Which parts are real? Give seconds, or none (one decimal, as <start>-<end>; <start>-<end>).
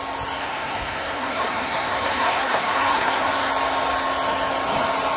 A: 0.0-0.4; 3.5-5.2